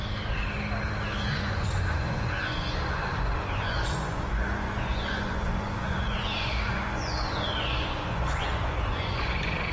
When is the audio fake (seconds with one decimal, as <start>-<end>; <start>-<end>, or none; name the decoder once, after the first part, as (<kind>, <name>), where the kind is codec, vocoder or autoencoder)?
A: 1.2-9.7 (vocoder, Vocos)